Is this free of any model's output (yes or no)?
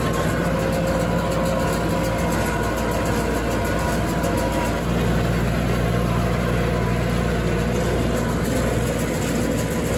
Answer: yes